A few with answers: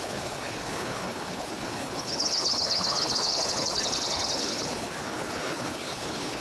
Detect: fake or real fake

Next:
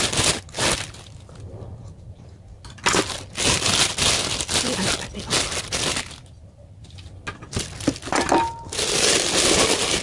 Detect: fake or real real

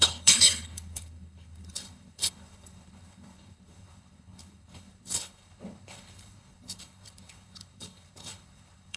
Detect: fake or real fake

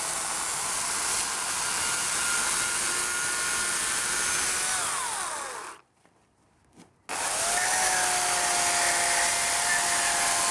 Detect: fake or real real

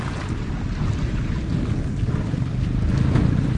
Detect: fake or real real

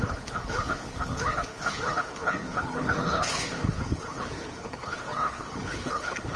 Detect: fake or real fake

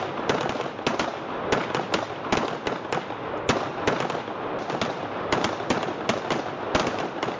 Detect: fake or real real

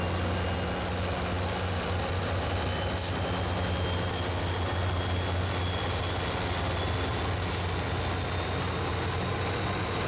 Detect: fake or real real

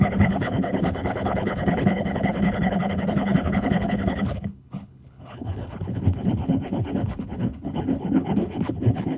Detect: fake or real fake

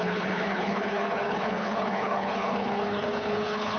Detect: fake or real fake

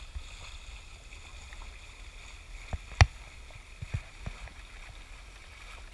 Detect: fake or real real